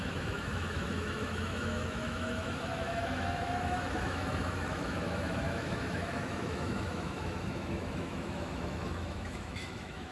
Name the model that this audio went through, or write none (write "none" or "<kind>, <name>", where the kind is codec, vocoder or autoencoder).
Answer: autoencoder, DAC-VAE